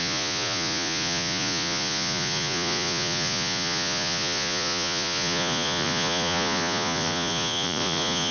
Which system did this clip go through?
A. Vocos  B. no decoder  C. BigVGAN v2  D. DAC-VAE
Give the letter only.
A